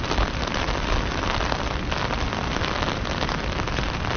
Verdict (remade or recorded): remade